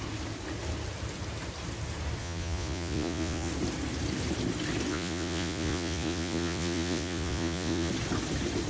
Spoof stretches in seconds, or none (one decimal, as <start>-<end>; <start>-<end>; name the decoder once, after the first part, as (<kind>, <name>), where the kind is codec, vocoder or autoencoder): 2.2-3.5 (vocoder, Vocos); 4.9-7.9